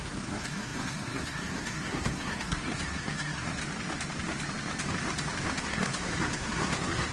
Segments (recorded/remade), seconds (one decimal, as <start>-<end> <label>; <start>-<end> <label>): 0.0-3.6 remade; 3.6-5.6 recorded; 5.6-7.1 remade